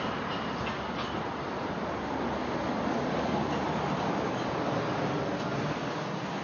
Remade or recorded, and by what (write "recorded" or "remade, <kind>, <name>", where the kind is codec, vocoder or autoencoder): recorded